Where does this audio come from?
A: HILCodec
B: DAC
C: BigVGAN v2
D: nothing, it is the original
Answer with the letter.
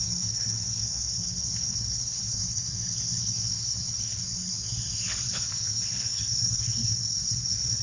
A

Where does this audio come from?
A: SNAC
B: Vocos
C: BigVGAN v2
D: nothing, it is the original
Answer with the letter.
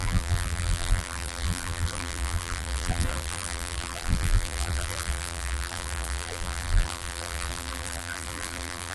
C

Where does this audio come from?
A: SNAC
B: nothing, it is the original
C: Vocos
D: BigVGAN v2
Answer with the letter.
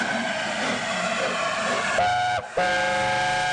B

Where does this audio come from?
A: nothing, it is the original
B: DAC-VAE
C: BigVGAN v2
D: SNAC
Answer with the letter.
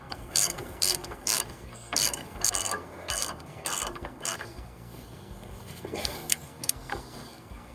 D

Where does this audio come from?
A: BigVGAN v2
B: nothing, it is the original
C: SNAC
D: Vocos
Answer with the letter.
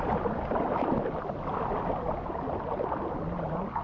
B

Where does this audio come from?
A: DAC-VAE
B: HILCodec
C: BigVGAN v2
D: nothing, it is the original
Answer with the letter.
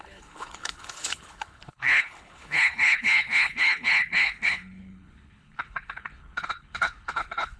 B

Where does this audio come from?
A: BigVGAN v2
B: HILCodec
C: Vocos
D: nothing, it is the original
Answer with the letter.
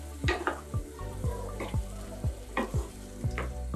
A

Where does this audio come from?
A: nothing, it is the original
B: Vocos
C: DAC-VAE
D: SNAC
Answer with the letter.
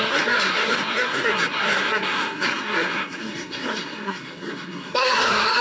D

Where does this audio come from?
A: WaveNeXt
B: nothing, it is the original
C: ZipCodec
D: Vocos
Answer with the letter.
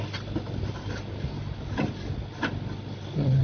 B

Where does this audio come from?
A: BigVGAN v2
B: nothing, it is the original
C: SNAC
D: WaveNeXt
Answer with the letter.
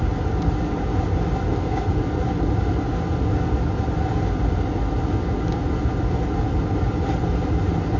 B